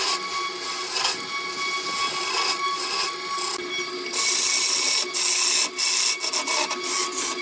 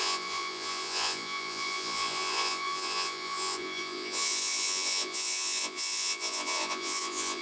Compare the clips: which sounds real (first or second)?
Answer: first